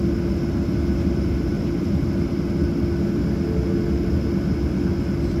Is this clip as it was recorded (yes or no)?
yes